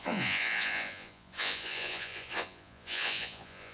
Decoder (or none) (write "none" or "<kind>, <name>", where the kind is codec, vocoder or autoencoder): vocoder, Vocos